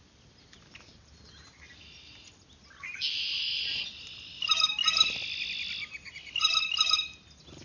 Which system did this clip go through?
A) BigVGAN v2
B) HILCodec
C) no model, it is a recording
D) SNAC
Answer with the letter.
C